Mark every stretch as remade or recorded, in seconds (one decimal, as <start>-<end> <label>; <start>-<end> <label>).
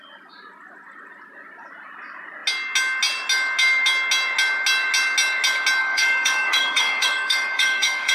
0.0-5.8 recorded; 5.8-8.1 remade